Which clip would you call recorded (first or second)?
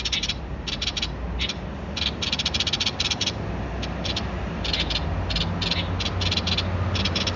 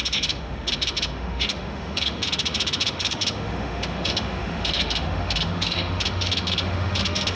first